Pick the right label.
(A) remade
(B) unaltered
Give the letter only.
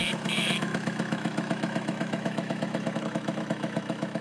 A